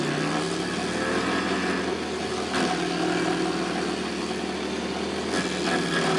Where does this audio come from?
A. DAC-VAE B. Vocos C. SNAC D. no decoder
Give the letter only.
D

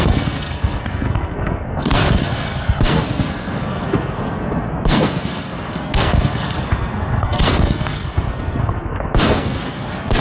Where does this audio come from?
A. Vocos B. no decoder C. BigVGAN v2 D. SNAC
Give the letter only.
D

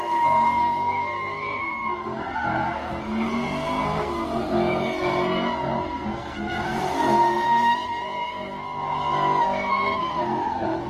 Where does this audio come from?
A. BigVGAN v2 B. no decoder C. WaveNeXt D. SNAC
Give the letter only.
D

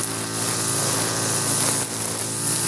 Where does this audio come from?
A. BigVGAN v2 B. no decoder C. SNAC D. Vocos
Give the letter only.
B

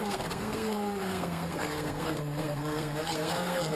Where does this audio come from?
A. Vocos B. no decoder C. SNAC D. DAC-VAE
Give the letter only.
C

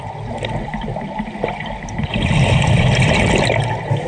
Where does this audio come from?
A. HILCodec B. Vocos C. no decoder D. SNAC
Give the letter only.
C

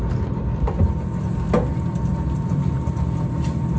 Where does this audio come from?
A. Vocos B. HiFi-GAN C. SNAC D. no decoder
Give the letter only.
D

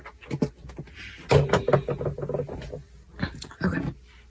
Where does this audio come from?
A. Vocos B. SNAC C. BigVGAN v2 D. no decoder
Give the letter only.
D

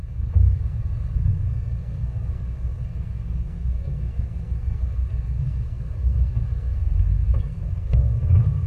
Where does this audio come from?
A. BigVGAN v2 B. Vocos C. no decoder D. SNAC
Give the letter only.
D